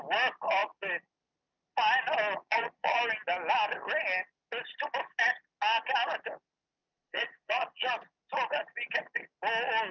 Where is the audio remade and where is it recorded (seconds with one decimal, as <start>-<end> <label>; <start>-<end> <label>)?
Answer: 0.0-2.5 recorded; 2.5-3.0 remade; 3.0-6.8 recorded; 6.8-7.9 remade; 7.9-9.9 recorded